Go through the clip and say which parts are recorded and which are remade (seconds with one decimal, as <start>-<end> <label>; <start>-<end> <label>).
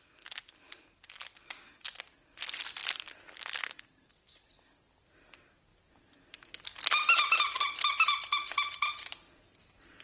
0.0-10.0 recorded